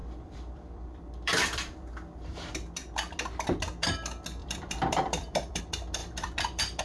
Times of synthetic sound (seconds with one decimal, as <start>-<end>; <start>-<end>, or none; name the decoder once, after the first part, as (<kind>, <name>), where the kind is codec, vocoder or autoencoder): 0.0-2.5 (vocoder, BigVGAN v2); 4.4-5.6; 6.0-6.8